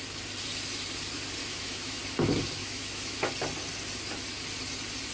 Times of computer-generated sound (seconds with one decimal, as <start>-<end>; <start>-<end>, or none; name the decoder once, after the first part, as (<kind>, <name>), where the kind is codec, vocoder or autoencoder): 1.4-2.0 (autoencoder, DAC-VAE); 2.6-3.2